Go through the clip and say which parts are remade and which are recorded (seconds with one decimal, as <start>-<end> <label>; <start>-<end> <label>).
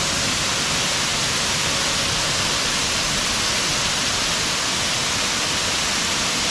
0.0-6.5 recorded